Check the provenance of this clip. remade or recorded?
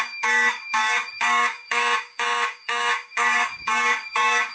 remade